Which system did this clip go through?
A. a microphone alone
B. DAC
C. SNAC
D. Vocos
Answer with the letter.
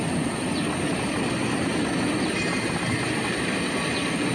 A